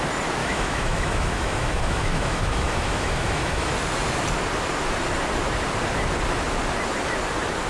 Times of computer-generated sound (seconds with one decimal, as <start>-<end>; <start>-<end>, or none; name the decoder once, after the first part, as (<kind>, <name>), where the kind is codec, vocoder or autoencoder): 0.4-3.7 (autoencoder, DAC-VAE)